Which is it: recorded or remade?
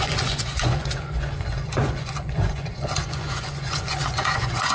remade